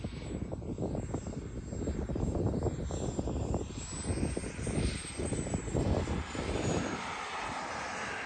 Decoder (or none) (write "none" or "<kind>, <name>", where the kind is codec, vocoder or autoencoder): none